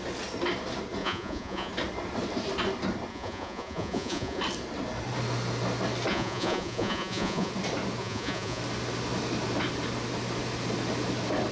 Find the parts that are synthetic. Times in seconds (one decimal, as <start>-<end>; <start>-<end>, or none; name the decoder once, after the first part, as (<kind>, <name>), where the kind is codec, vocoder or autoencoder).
1.0-1.7 (vocoder, Vocos); 3.1-4.4; 6.1-7.5; 8.0-8.6